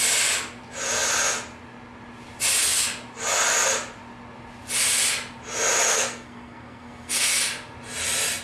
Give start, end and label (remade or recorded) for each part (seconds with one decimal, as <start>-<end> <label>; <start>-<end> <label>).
0.0-5.9 recorded; 5.9-7.4 remade; 7.4-8.4 recorded